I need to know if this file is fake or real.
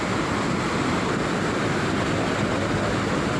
real